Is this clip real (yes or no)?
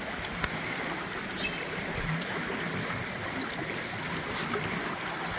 yes